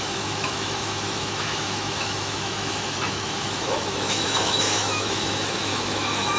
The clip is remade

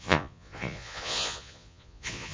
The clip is remade